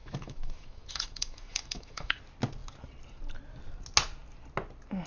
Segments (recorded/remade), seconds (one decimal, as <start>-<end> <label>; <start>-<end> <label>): 0.0-2.2 remade; 2.2-5.1 recorded